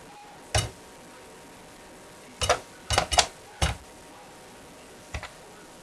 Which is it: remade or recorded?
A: recorded